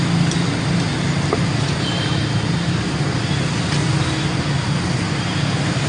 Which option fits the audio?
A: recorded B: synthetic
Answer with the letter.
A